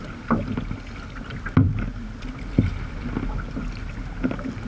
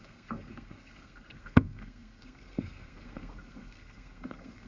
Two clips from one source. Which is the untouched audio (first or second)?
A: first